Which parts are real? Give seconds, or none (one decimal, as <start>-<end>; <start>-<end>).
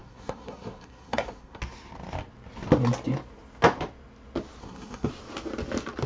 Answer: 1.6-4.6; 5.1-6.1